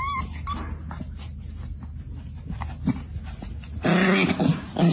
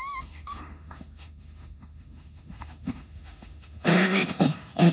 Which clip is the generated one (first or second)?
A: second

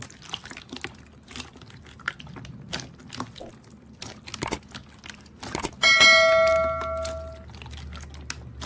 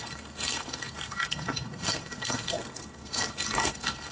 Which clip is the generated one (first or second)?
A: second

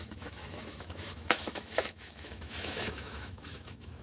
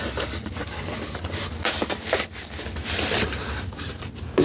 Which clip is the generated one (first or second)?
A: first